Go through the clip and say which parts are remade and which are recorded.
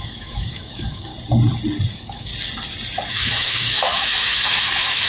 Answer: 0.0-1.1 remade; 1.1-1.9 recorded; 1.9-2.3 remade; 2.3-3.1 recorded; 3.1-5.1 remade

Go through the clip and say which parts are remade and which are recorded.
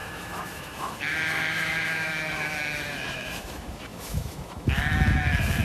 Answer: 0.0-5.6 remade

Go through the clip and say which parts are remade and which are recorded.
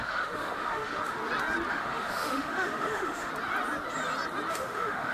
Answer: 0.0-1.2 remade; 1.2-1.7 recorded; 1.7-3.3 remade; 3.3-4.5 recorded; 4.5-5.1 remade